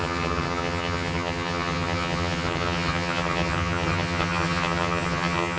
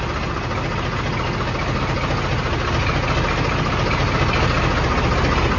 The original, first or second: second